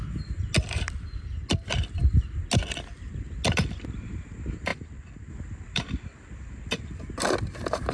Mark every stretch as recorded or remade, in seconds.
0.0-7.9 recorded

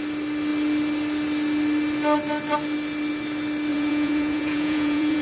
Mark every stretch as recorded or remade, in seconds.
0.0-3.7 recorded; 3.7-5.2 remade

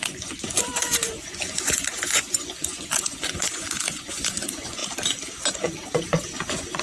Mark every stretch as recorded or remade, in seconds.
0.0-4.8 remade; 4.8-5.5 recorded; 5.5-6.8 remade

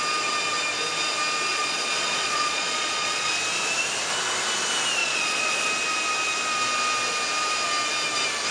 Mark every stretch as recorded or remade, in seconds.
0.0-1.5 recorded; 1.5-3.3 remade; 3.3-5.0 recorded; 5.0-5.7 remade; 5.7-8.5 recorded

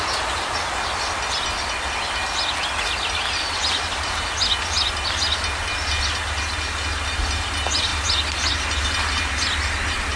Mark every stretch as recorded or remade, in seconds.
0.0-10.2 recorded

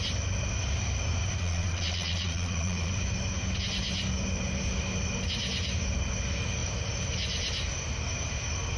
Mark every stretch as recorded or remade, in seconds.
0.0-1.4 recorded; 1.4-2.9 remade; 2.9-8.8 recorded

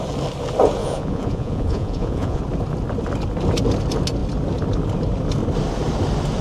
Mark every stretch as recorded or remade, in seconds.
0.0-0.8 recorded; 0.8-2.4 remade; 2.4-6.4 recorded